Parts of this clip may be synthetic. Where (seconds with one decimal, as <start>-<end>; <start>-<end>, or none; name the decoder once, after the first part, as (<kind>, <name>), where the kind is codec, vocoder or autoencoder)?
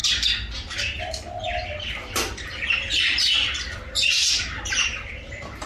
1.0-5.7 (vocoder, BigVGAN v2)